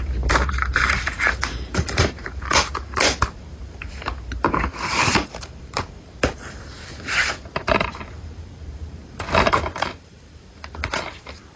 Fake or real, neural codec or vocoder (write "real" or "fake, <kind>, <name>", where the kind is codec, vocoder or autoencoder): fake, vocoder, BigVGAN v2